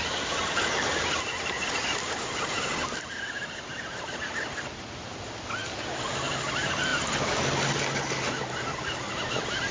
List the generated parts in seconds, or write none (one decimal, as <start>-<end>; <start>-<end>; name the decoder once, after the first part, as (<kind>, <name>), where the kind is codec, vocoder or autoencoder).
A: none